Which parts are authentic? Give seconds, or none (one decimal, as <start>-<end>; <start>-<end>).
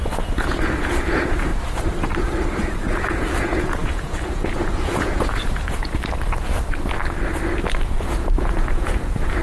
1.5-2.6; 6.0-8.0